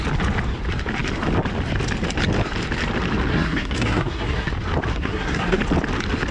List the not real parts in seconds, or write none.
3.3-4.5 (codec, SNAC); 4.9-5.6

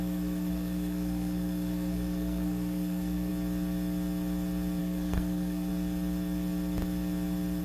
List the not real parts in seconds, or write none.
0.0-3.3 (codec, SNAC); 4.8-5.7